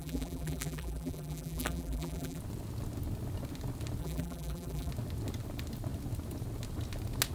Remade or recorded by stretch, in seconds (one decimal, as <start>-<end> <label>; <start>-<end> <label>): 0.0-2.4 remade; 2.4-4.0 recorded; 4.0-4.9 remade; 4.9-7.3 recorded

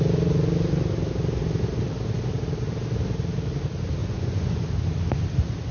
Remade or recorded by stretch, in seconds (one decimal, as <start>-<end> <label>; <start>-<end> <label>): 0.0-4.0 recorded; 4.0-4.6 remade; 4.6-5.7 recorded

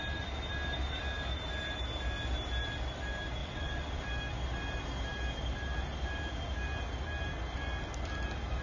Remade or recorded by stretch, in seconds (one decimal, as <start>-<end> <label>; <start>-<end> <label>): 0.0-3.4 recorded; 3.4-4.0 remade; 4.0-8.6 recorded